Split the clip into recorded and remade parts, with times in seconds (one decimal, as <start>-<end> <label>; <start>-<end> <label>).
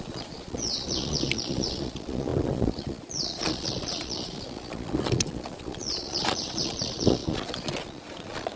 0.0-8.6 remade